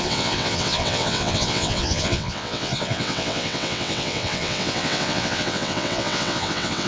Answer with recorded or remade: remade